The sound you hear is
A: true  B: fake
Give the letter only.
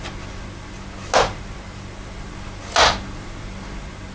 A